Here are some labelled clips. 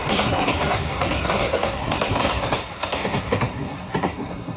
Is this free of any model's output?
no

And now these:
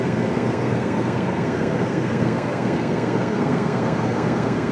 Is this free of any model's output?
no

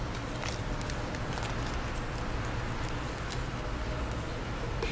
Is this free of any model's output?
yes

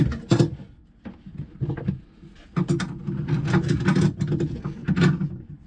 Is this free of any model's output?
yes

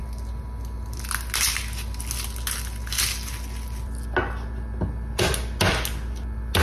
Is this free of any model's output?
yes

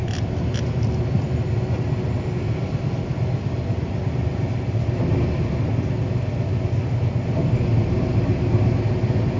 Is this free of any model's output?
yes